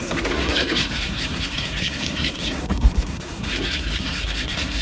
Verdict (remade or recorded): remade